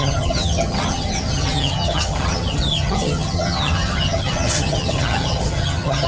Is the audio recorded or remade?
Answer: remade